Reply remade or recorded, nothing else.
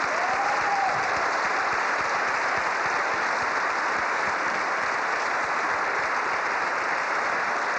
recorded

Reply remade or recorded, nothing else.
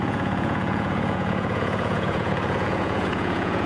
remade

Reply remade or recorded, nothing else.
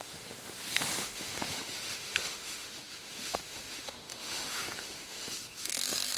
remade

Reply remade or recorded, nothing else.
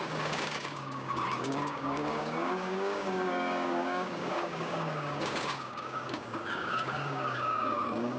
remade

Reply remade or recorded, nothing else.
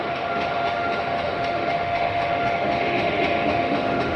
remade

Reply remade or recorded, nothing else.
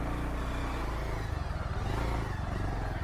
recorded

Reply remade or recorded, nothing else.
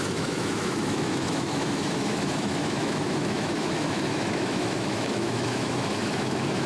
remade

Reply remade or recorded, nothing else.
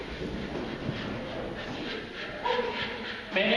recorded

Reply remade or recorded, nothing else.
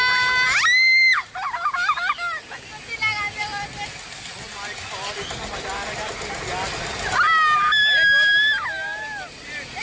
recorded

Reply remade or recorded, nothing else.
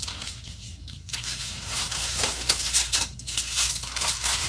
remade